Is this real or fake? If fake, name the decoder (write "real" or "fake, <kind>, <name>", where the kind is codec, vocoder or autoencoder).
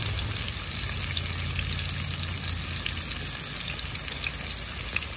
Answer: real